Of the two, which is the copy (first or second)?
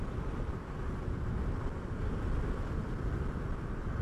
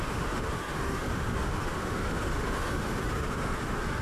second